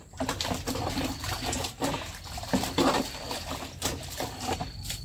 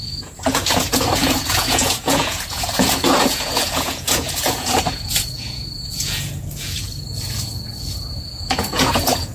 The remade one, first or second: second